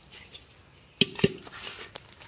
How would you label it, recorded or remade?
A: recorded